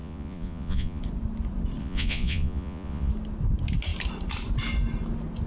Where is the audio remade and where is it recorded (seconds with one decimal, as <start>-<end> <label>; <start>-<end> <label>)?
0.0-1.0 remade; 1.0-1.8 recorded; 1.8-3.1 remade; 3.1-5.5 recorded